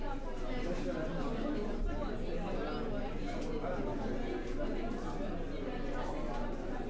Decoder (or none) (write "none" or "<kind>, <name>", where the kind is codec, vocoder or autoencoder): none